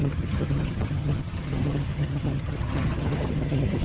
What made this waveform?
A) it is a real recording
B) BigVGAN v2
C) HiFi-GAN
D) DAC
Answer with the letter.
C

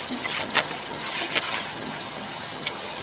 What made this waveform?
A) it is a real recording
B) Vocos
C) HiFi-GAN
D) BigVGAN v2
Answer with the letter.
C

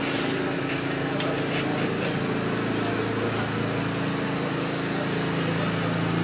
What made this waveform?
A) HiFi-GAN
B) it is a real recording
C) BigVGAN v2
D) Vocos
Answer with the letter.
B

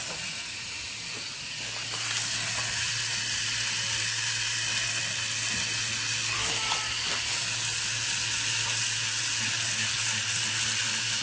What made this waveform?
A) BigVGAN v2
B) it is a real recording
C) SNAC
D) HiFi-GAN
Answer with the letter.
B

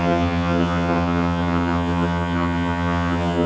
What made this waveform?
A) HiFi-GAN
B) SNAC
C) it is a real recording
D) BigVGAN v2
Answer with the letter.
A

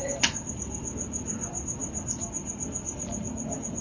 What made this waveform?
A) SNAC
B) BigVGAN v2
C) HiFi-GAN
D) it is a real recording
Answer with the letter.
D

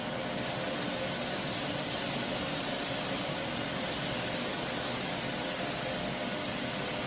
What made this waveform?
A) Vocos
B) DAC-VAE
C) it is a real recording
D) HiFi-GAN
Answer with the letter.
C